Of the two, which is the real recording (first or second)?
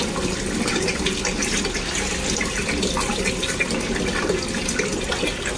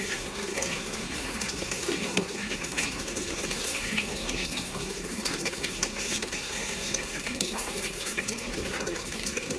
first